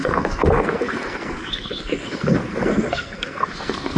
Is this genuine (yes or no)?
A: no